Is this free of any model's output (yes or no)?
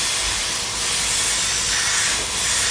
yes